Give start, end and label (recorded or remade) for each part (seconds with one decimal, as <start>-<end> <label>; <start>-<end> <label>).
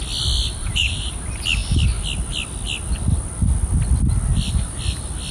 0.0-0.6 recorded; 0.6-1.1 remade; 1.1-5.3 recorded